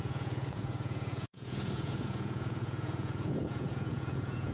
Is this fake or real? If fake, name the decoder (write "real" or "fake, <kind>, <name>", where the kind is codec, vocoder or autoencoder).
fake, vocoder, Vocos